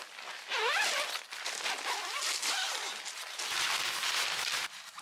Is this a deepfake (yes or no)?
no